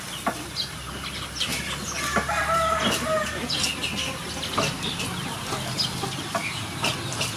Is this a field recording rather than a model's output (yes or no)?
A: yes